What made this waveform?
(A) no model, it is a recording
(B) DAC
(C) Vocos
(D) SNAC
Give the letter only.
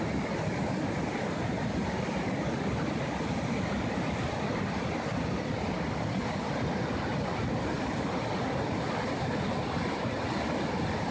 A